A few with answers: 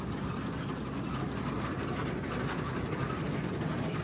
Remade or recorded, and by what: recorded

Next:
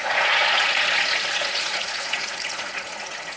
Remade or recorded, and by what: remade, vocoder, Vocos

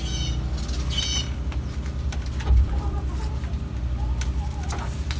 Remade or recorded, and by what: recorded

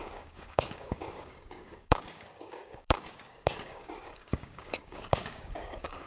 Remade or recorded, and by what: remade, codec, DAC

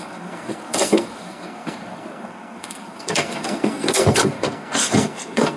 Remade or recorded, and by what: remade, codec, SNAC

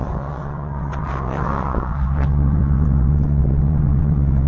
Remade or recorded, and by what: remade, vocoder, WaveNeXt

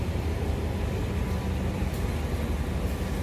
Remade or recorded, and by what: recorded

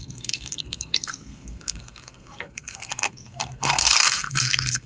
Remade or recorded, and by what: remade, codec, SNAC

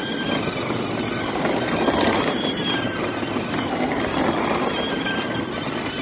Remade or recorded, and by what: recorded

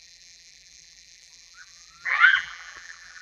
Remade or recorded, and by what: remade, vocoder, BigVGAN v2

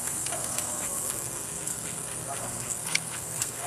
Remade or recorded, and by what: remade, codec, SNAC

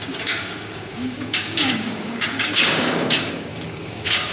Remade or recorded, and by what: remade, codec, DAC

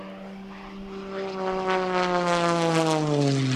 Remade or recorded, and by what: recorded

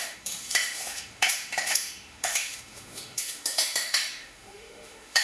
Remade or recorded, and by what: remade, autoencoder, DAC-VAE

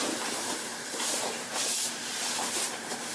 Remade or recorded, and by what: remade, vocoder, BigVGAN v2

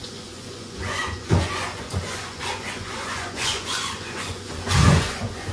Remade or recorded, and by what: remade, vocoder, Vocos